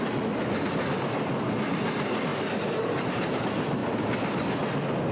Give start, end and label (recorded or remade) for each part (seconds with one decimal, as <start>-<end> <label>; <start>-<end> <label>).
0.0-5.1 recorded